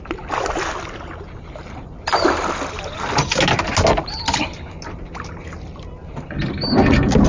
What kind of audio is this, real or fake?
real